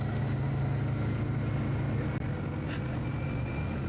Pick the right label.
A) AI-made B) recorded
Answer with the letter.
B